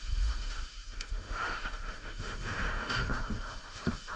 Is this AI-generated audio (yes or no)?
yes